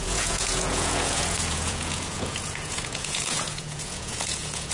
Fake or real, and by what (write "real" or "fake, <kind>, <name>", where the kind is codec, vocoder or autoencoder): fake, vocoder, Vocos